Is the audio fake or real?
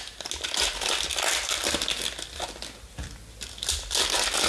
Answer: real